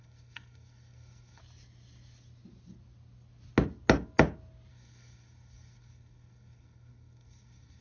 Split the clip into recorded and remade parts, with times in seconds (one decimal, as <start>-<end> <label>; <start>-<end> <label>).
0.0-1.4 remade; 1.4-4.7 recorded; 4.7-7.8 remade